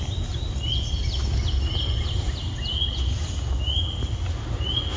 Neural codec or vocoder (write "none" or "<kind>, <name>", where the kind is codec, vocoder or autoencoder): none